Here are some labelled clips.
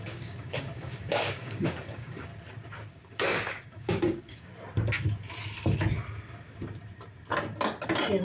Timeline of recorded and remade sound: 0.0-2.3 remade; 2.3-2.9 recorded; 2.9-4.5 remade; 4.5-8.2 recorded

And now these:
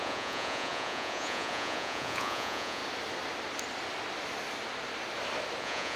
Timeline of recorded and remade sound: 0.0-2.8 remade; 2.8-5.6 recorded; 5.6-6.0 remade

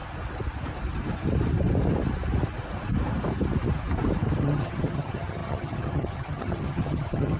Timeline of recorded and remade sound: 0.0-4.4 recorded; 4.4-7.4 remade